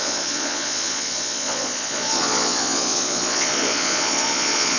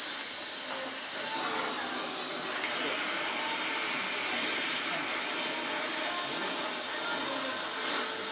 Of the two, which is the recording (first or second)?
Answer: second